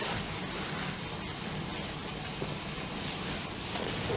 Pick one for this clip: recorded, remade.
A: remade